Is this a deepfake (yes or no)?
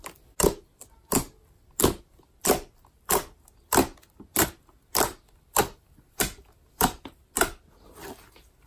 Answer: no